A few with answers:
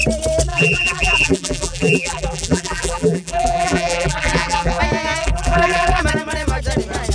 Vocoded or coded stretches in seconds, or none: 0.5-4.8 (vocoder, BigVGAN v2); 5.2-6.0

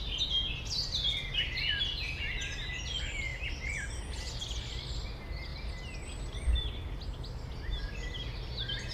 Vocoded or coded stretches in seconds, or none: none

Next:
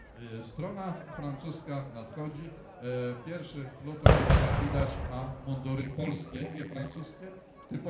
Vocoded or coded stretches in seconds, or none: 5.8-7.0 (vocoder, BigVGAN v2)

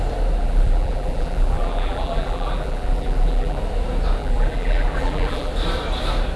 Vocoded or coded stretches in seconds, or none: 0.4-3.6 (vocoder, BigVGAN v2); 4.2-5.5

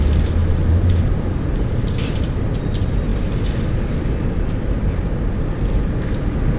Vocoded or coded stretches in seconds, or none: 0.4-2.4 (vocoder, BigVGAN v2)

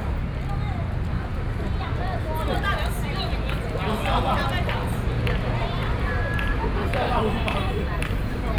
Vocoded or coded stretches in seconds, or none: 5.8-7.1 (vocoder, BigVGAN v2)